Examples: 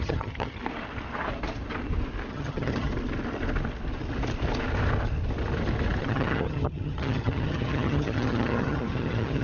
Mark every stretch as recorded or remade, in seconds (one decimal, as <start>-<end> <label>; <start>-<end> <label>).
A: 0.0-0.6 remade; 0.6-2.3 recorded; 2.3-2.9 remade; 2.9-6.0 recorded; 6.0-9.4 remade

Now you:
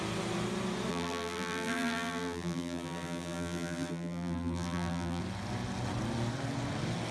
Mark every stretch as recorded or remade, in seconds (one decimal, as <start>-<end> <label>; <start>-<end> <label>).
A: 0.0-0.9 recorded; 0.9-5.2 remade; 5.2-7.1 recorded

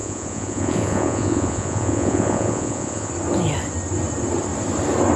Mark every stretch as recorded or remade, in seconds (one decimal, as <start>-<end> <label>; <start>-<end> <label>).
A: 0.0-3.1 remade; 3.1-5.2 recorded

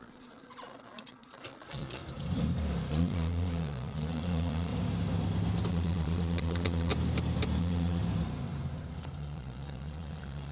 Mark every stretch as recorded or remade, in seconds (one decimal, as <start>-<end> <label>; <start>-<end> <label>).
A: 0.0-2.0 remade; 2.0-2.9 recorded; 2.9-4.7 remade; 4.7-5.7 recorded; 5.7-6.9 remade; 6.9-7.6 recorded; 7.6-8.0 remade; 8.0-9.2 recorded; 9.2-10.5 remade